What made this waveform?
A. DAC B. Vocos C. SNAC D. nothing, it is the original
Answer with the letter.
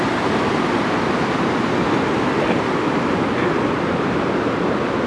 D